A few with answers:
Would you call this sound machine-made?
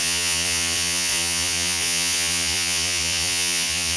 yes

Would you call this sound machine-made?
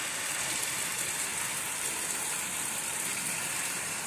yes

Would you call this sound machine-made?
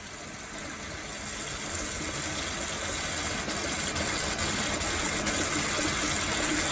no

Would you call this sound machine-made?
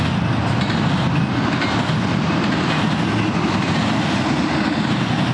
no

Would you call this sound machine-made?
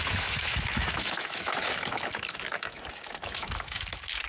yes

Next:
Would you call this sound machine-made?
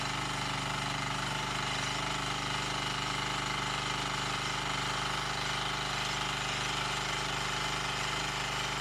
no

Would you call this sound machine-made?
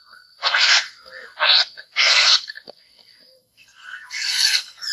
yes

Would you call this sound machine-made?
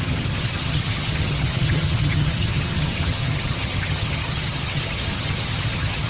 yes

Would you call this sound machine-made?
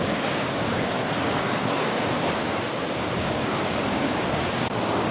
yes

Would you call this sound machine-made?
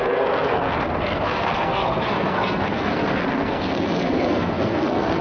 yes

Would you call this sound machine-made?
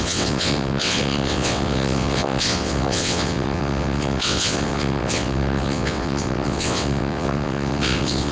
yes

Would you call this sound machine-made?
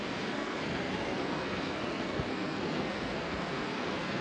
yes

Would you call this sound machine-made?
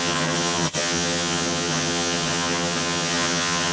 yes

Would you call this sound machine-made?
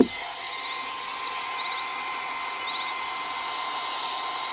no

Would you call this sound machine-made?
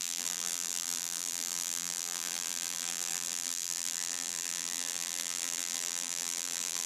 yes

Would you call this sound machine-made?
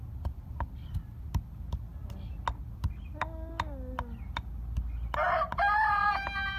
no